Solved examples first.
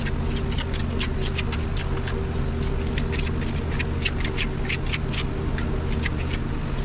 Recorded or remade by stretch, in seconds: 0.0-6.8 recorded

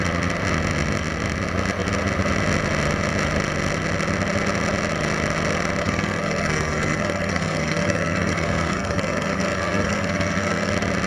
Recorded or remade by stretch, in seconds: 0.0-5.8 recorded; 5.8-10.7 remade; 10.7-11.1 recorded

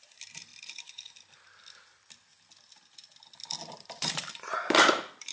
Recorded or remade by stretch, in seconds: 0.0-0.5 remade; 0.5-3.7 recorded; 3.7-5.3 remade

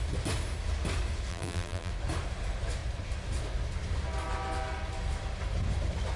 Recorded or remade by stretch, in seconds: 0.0-1.3 recorded; 1.3-1.9 remade; 1.9-6.2 recorded

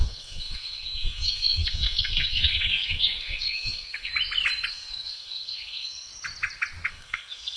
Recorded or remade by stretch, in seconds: 0.0-4.1 remade; 4.1-4.7 recorded; 4.7-6.1 remade; 6.1-6.9 recorded; 6.9-7.6 remade

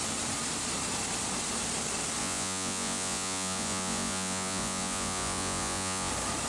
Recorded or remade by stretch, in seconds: 0.0-2.2 recorded; 2.2-6.1 remade; 6.1-6.5 recorded